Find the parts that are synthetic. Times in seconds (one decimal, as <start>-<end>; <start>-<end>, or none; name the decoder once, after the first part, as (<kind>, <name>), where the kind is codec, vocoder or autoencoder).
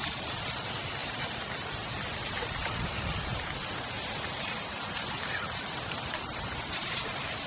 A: 0.0-7.5 (vocoder, BigVGAN v2)